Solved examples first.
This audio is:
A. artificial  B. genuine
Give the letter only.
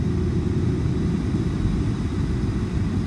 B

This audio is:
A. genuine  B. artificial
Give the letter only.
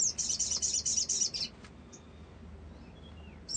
A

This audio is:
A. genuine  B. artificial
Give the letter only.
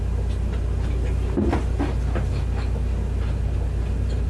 A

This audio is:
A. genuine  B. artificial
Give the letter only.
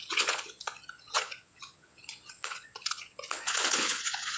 B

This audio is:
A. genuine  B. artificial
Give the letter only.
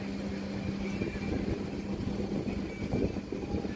A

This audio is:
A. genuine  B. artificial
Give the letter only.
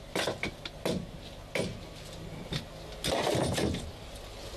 A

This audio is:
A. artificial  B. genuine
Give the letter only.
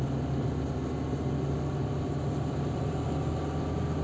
B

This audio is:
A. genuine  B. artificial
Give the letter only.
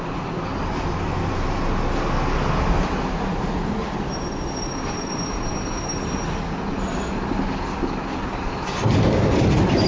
A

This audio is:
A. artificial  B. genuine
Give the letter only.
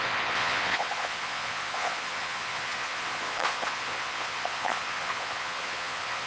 A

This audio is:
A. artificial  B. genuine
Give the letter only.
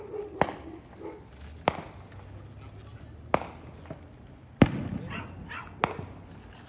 B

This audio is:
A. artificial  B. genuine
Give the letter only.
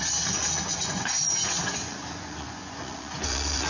A